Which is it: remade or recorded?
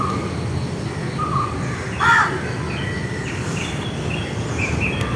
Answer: recorded